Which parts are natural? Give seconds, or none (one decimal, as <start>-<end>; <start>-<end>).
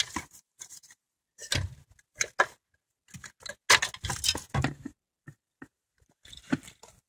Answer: 0.0-7.1